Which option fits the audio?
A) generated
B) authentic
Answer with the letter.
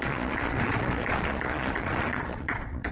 A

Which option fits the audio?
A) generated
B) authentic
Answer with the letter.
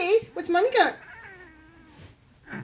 B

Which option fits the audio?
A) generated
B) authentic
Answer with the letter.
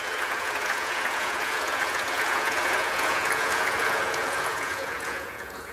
A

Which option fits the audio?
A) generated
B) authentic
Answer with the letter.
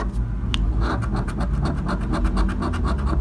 B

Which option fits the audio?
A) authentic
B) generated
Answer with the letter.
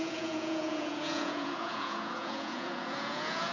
B